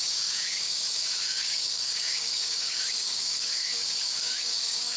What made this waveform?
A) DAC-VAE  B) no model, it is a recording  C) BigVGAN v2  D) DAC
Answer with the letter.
D